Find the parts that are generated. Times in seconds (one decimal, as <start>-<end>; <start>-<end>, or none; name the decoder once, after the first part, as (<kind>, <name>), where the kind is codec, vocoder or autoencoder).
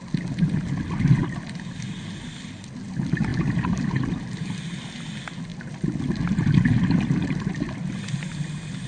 1.2-1.8 (vocoder, BigVGAN v2); 3.3-4.2